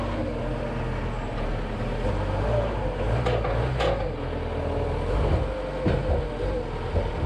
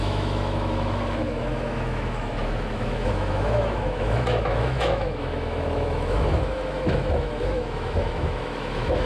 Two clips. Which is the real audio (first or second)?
first